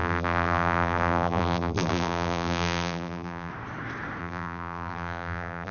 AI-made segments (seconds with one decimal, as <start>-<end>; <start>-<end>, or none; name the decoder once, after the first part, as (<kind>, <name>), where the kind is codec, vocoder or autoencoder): 0.0-3.5 (vocoder, BigVGAN v2); 4.2-5.7